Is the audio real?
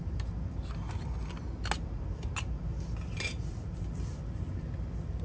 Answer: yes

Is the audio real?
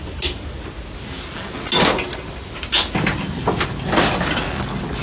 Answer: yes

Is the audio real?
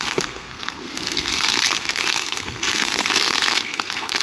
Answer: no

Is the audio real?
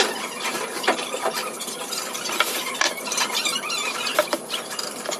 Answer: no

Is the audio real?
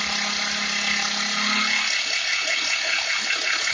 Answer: yes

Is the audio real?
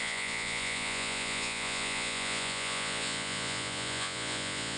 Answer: no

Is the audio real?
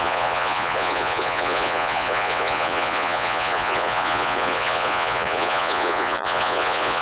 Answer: no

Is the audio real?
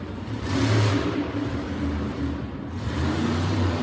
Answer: no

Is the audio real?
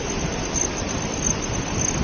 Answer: yes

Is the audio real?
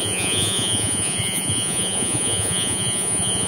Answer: no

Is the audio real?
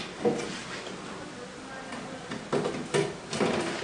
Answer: yes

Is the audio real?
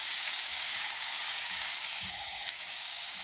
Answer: no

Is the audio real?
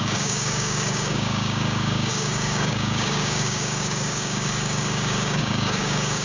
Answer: no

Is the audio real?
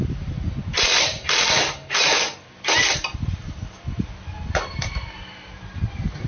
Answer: yes